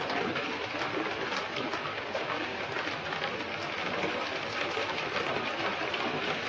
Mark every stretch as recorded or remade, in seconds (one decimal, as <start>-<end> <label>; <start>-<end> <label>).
0.0-1.9 recorded; 1.9-2.6 remade; 2.6-6.5 recorded